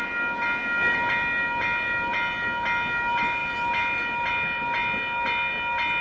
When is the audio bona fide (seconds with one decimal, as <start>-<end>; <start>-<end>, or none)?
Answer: 0.0-6.0